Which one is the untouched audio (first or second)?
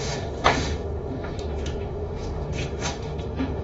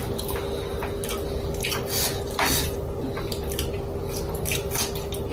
second